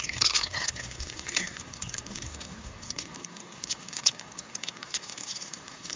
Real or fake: fake